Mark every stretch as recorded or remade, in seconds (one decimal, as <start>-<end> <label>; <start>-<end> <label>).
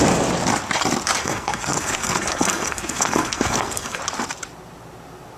0.0-1.2 recorded; 1.2-4.0 remade; 4.0-5.4 recorded